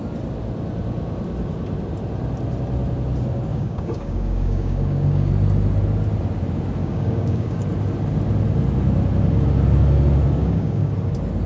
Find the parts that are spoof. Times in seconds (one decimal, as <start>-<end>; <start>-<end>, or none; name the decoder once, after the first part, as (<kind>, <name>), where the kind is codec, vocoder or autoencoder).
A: 3.5-5.3 (codec, DAC); 6.8-7.6; 10.4-10.9